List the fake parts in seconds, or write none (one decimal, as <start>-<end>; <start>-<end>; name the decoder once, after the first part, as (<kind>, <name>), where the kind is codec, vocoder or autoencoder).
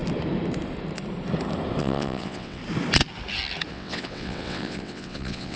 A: 1.8-2.6 (vocoder, WaveNeXt); 3.7-5.6